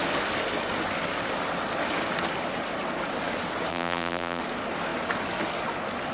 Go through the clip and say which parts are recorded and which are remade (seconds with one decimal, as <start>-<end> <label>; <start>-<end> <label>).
0.0-3.7 recorded; 3.7-4.4 remade; 4.4-6.1 recorded

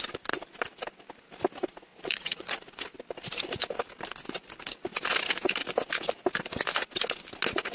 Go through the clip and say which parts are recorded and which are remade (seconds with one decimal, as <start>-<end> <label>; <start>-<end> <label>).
0.0-1.9 recorded; 1.9-2.5 remade; 2.5-7.7 recorded

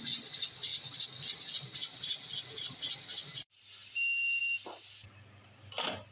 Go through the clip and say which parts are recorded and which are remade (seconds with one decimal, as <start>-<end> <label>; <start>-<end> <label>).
0.0-6.1 recorded

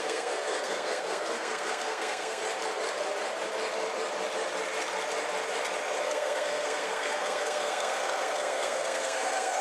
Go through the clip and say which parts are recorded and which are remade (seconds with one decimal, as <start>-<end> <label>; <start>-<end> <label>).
0.0-2.4 remade; 2.4-6.0 recorded; 6.0-9.6 remade

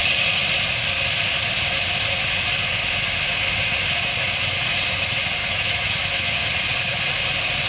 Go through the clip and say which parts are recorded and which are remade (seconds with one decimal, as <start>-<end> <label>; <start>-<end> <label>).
0.0-5.4 recorded; 5.4-6.4 remade; 6.4-7.7 recorded

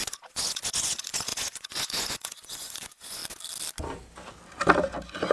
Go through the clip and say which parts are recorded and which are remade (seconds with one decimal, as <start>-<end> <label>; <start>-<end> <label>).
0.0-3.2 remade; 3.2-5.3 recorded